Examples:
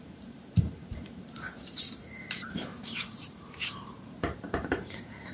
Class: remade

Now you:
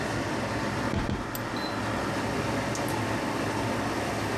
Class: recorded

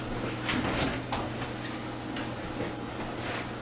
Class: recorded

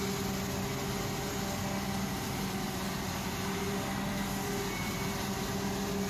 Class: recorded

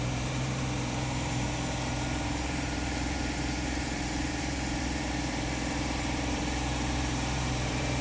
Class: remade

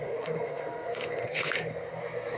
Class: remade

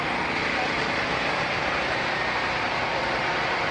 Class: recorded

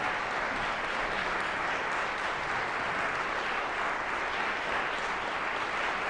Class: recorded